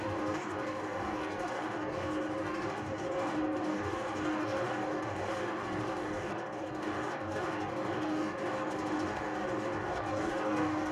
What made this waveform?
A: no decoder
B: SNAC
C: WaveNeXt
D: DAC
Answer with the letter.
D